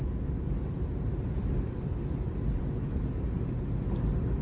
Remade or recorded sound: recorded